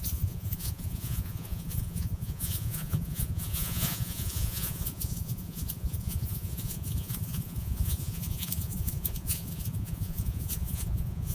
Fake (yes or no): yes